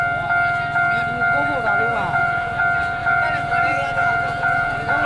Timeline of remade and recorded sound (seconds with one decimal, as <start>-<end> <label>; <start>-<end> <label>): 0.0-1.9 recorded; 1.9-2.6 remade; 2.6-3.0 recorded; 3.0-5.1 remade